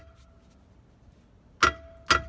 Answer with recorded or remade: recorded